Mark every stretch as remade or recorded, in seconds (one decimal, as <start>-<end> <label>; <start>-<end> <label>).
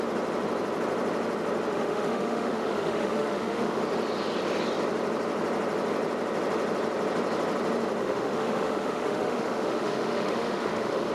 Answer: 0.0-1.7 recorded; 1.7-3.8 remade; 3.8-8.0 recorded; 8.0-11.1 remade